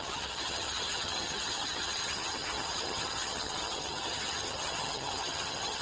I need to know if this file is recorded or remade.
remade